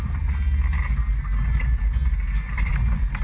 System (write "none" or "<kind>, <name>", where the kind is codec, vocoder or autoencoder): none